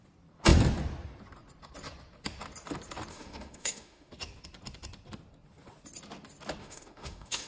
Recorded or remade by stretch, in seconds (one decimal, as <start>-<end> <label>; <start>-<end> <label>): 0.0-3.1 recorded; 3.1-4.1 remade; 4.1-6.6 recorded; 6.6-7.5 remade